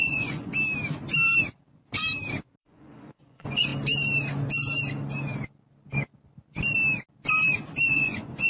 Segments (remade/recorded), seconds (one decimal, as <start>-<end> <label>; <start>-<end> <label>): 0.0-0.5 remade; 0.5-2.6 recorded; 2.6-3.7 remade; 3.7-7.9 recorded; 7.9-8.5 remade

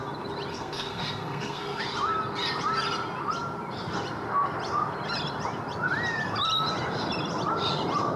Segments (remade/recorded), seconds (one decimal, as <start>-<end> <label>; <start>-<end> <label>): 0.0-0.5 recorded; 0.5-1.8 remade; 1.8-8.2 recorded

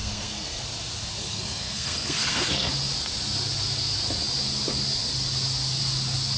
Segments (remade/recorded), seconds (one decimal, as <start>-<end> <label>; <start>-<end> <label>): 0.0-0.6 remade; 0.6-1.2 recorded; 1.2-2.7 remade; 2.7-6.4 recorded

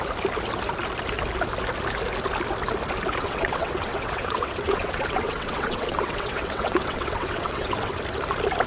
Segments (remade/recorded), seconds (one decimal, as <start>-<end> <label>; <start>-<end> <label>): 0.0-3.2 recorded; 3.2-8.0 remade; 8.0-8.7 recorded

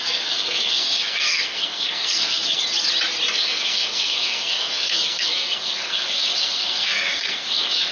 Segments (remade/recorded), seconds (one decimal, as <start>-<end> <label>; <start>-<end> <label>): 0.0-2.6 remade; 2.6-3.3 recorded; 3.3-7.9 remade

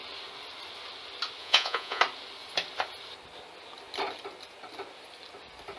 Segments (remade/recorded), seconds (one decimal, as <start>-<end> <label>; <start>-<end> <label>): 0.0-1.4 recorded; 1.4-2.0 remade; 2.0-5.8 recorded

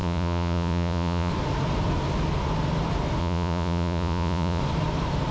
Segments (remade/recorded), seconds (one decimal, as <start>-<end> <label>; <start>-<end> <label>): 0.0-1.3 remade; 1.3-3.2 recorded; 3.2-4.6 remade; 4.6-5.3 recorded

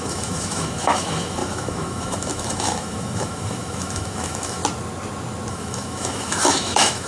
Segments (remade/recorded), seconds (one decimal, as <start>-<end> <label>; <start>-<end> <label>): 0.0-4.6 remade; 4.6-5.5 recorded; 5.5-7.1 remade